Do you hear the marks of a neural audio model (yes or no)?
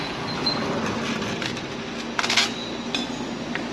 no